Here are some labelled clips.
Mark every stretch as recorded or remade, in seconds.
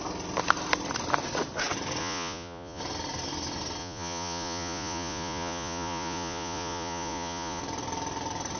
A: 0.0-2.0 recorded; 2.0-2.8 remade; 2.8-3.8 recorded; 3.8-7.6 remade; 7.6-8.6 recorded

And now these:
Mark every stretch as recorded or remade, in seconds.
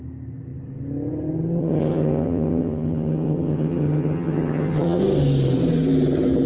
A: 0.0-1.6 recorded; 1.6-5.0 remade; 5.0-6.5 recorded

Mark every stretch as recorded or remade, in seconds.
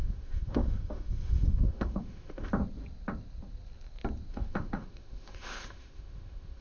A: 0.0-2.5 remade; 2.5-4.3 recorded; 4.3-6.6 remade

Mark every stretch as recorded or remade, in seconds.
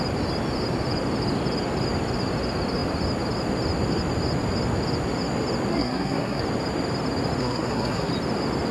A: 0.0-5.7 recorded; 5.7-6.4 remade; 6.4-7.4 recorded; 7.4-8.1 remade; 8.1-8.7 recorded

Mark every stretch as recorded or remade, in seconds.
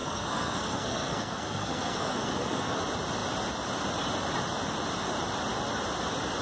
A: 0.0-2.8 remade; 2.8-6.4 recorded